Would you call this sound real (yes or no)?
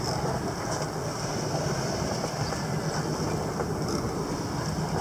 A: yes